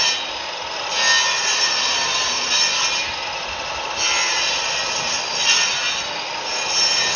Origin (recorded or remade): recorded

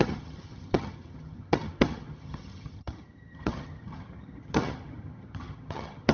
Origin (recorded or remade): remade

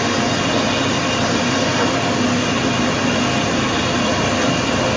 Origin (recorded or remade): recorded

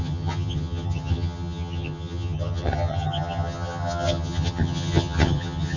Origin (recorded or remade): remade